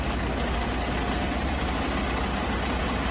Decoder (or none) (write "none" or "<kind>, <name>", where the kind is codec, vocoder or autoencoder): none